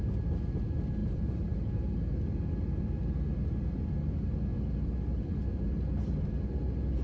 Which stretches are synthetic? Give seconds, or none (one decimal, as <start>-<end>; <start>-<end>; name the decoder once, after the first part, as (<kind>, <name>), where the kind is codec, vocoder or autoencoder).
none

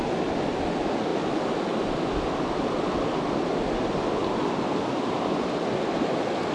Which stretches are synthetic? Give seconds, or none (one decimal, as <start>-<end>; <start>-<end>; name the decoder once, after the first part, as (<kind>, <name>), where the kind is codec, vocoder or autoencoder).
none